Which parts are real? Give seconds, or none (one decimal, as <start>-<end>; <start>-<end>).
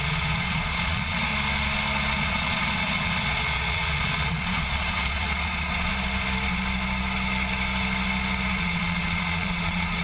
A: 1.3-2.2; 5.9-8.6